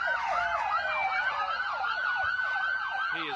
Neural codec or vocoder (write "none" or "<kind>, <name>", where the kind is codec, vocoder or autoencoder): none